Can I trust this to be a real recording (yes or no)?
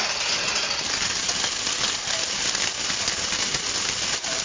yes